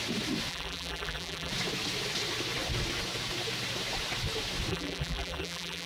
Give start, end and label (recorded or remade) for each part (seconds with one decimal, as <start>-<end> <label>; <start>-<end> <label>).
0.0-0.5 recorded; 0.5-1.5 remade; 1.5-4.7 recorded; 4.7-5.9 remade